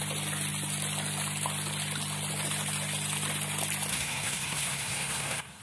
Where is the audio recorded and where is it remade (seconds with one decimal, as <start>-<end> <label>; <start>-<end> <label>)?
0.0-3.9 recorded; 3.9-5.6 remade